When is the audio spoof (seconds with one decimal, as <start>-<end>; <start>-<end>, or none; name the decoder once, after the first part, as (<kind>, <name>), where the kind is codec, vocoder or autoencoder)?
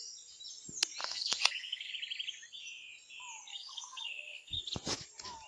1.0-1.9 (codec, SNAC); 3.5-4.6